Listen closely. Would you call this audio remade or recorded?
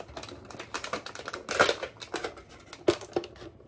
recorded